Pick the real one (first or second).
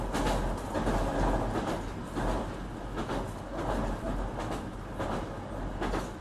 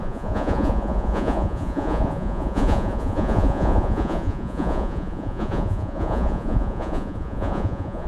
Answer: first